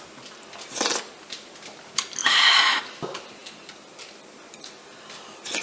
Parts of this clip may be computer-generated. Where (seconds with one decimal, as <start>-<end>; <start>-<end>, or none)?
2.2-2.8

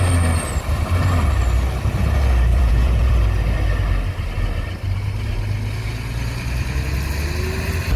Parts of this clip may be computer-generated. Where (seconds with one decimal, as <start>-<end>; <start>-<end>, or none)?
2.5-3.1